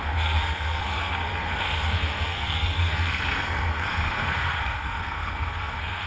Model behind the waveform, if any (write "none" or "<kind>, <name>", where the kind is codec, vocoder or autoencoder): codec, SNAC